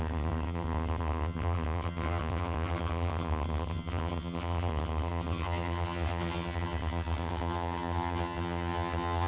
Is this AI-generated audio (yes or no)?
yes